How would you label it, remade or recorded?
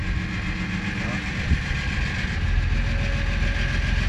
recorded